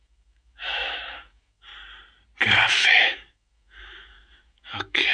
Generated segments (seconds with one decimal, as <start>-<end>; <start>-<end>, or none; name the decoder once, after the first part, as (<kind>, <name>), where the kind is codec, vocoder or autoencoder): 0.0-1.7 (autoencoder, DAC-VAE); 2.7-5.1